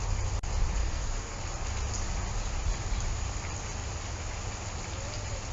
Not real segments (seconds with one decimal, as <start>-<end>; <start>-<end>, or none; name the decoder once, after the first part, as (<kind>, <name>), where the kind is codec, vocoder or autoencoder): 0.8-1.4 (codec, SNAC)